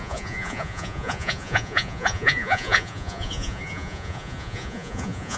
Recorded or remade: remade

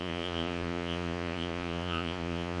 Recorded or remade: remade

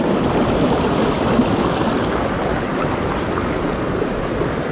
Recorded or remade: recorded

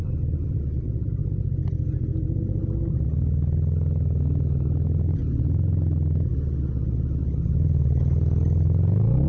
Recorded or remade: recorded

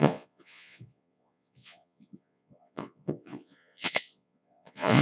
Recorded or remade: remade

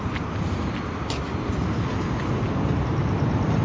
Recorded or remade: recorded